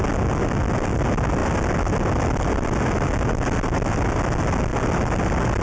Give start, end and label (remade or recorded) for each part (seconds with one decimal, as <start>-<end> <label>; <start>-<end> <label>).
0.0-4.7 recorded; 4.7-5.6 remade